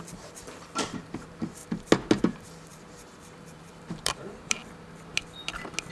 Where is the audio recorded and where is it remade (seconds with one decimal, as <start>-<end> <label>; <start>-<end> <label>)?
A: 0.0-1.6 remade; 1.6-2.2 recorded; 2.2-4.6 remade; 4.6-5.9 recorded